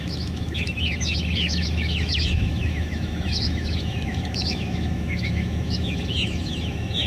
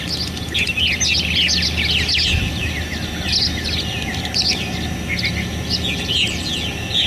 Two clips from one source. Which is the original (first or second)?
second